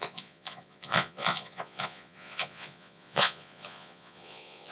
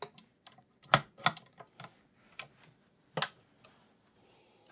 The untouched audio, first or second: second